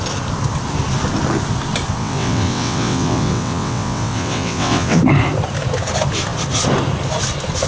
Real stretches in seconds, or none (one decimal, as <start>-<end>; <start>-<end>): 0.0-2.0; 5.0-7.7